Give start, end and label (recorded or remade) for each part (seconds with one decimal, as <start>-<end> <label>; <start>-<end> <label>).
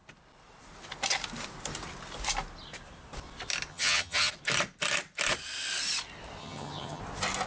0.0-3.7 recorded; 3.7-4.3 remade; 4.3-6.4 recorded; 6.4-7.0 remade; 7.0-7.5 recorded